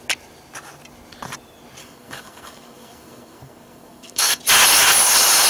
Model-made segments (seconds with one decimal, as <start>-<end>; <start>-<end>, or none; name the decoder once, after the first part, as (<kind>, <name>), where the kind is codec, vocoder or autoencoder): 1.8-4.4 (codec, SNAC)